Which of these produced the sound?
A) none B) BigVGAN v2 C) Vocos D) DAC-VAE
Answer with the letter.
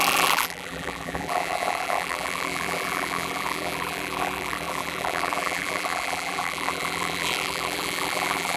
B